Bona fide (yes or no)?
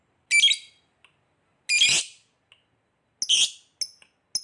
yes